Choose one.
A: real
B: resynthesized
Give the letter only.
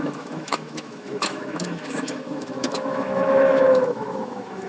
B